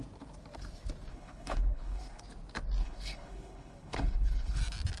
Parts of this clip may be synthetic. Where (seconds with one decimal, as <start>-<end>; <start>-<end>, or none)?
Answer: 1.1-2.2; 2.8-4.6